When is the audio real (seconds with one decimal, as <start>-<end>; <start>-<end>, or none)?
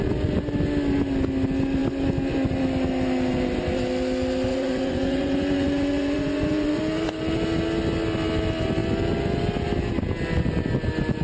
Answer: 0.0-4.5; 6.8-11.2